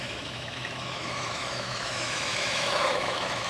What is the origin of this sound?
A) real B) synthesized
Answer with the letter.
B